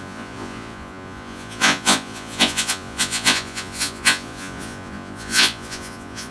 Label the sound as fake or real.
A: fake